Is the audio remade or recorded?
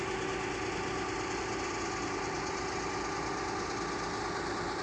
recorded